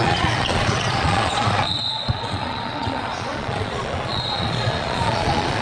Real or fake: fake